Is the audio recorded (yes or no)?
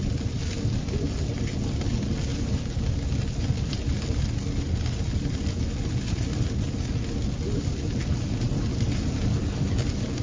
yes